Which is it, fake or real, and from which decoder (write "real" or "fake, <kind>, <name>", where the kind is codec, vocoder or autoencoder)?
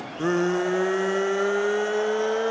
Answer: real